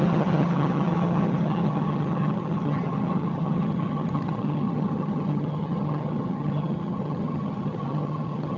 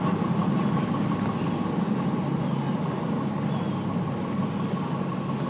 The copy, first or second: first